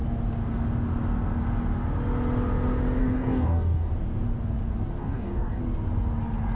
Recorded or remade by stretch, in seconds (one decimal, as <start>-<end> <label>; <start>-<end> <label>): 0.0-3.0 recorded; 3.0-3.9 remade; 3.9-5.0 recorded; 5.0-5.6 remade; 5.6-6.5 recorded